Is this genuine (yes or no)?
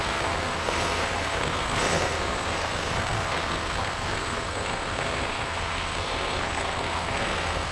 no